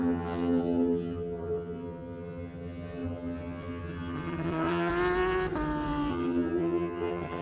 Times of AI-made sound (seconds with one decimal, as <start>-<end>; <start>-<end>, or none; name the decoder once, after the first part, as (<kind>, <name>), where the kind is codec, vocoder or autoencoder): 0.0-4.9 (vocoder, HiFi-GAN); 6.1-7.4